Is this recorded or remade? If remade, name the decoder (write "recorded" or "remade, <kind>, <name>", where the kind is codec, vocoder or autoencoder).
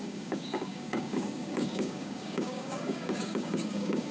remade, codec, DAC